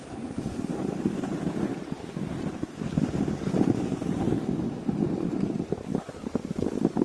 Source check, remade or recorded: recorded